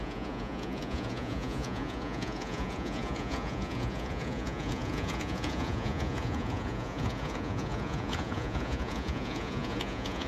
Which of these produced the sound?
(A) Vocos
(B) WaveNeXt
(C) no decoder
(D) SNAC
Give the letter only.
A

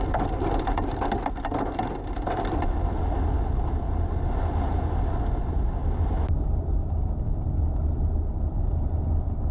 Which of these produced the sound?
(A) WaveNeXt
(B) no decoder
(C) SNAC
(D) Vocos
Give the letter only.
B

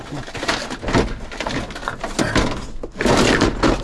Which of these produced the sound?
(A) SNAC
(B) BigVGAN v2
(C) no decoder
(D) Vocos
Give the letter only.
C